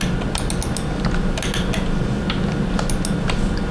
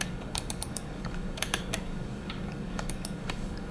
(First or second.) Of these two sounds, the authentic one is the first